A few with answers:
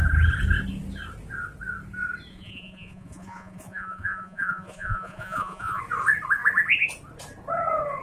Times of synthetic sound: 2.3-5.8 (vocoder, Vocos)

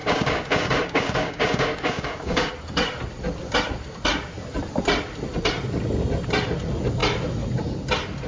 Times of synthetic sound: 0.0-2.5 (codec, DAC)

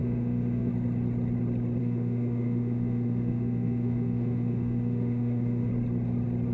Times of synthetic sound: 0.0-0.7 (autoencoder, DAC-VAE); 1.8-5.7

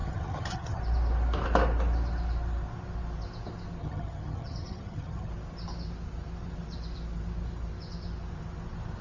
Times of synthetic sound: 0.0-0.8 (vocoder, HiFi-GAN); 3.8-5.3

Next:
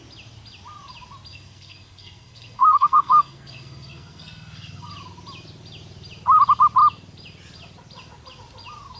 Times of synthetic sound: 1.3-4.9 (codec, SNAC)

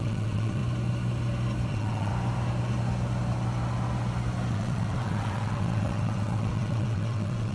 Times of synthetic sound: 0.0-0.6 (vocoder, WaveNeXt); 1.7-2.1; 4.5-7.5